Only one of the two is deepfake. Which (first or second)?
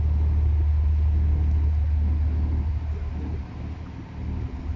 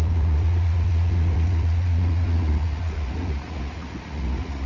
second